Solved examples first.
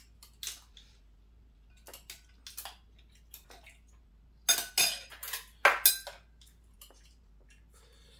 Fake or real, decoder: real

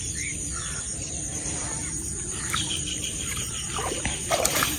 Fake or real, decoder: fake, vocoder, BigVGAN v2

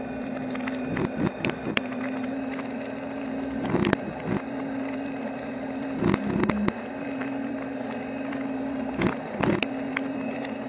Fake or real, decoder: fake, vocoder, BigVGAN v2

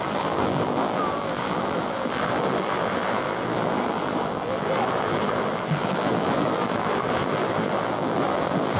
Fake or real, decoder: fake, vocoder, BigVGAN v2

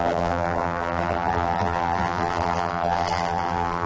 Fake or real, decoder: fake, vocoder, BigVGAN v2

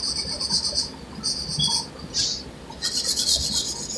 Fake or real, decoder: real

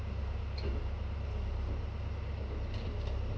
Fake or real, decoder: real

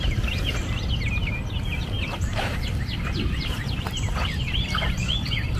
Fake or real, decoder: fake, vocoder, BigVGAN v2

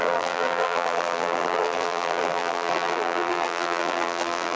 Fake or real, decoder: fake, vocoder, BigVGAN v2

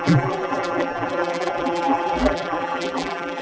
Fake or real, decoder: fake, vocoder, BigVGAN v2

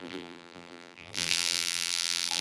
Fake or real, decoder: fake, vocoder, BigVGAN v2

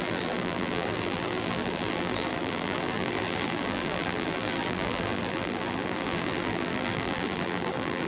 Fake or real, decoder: fake, vocoder, BigVGAN v2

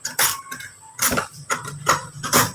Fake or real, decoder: fake, vocoder, BigVGAN v2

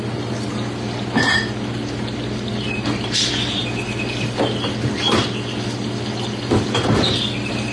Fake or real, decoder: real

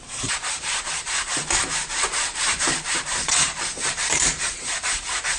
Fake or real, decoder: fake, vocoder, BigVGAN v2